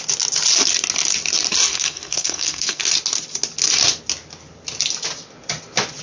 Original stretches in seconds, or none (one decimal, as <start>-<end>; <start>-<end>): 0.0-1.7; 2.8-6.0